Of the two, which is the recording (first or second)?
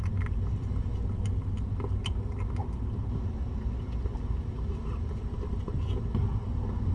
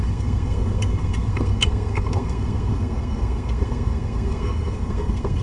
first